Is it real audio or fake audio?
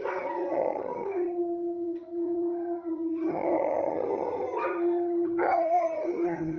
fake